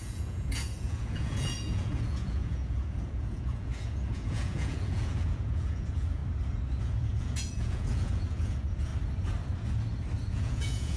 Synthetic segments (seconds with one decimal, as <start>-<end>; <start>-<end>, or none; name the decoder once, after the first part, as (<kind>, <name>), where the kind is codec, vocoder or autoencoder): 0.0-6.2 (vocoder, Vocos); 6.8-8.9; 10.3-11.0